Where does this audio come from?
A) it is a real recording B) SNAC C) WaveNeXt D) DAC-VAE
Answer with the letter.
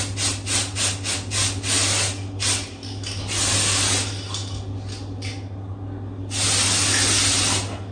A